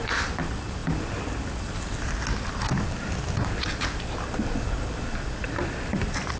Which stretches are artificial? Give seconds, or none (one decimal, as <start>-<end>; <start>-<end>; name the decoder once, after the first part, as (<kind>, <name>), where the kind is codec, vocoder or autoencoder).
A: none